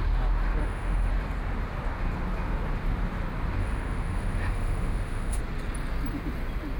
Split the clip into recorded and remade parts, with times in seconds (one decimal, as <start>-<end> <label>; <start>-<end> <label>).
0.0-0.6 recorded; 0.6-1.1 remade; 1.1-3.6 recorded; 3.6-5.4 remade; 5.4-6.8 recorded